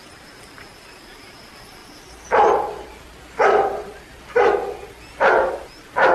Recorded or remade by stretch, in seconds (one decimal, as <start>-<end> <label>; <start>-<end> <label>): 0.0-6.1 recorded